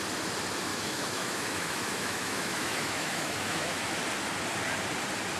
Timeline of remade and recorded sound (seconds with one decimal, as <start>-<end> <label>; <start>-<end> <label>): 0.0-0.7 recorded; 0.7-3.9 remade; 3.9-5.4 recorded